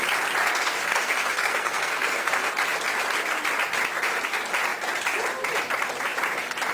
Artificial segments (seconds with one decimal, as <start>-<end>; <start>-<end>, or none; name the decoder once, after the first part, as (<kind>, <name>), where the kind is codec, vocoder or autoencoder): 0.4-2.5 (codec, SNAC)